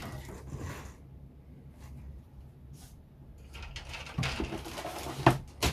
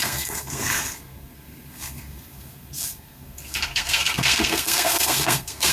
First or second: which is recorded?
first